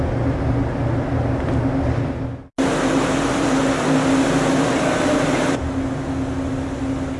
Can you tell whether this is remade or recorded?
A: recorded